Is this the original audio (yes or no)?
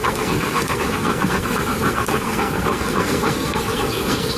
no